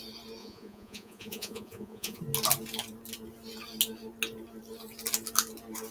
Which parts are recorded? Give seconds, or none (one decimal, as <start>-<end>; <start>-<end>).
0.0-0.4; 2.2-5.9